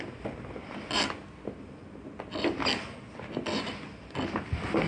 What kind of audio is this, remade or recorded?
recorded